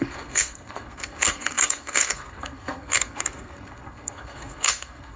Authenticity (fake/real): fake